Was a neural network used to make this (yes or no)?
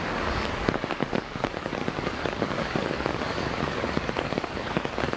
yes